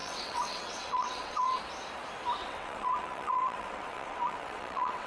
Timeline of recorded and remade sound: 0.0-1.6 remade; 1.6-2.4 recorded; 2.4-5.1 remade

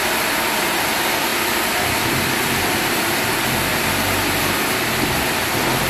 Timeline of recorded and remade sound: 0.0-1.3 recorded; 1.3-3.2 remade; 3.2-3.7 recorded; 3.7-4.4 remade; 4.4-5.9 recorded

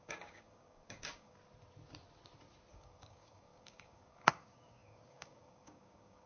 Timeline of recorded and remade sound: 0.0-1.4 remade; 1.4-2.7 recorded; 2.7-6.3 remade

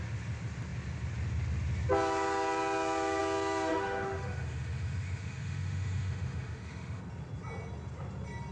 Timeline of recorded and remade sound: 0.0-3.7 recorded; 3.7-7.0 remade; 7.0-8.5 recorded